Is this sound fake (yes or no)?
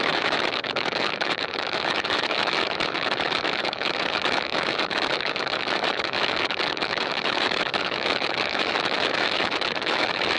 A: yes